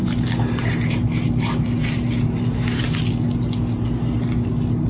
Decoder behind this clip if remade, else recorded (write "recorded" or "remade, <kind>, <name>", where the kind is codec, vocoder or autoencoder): recorded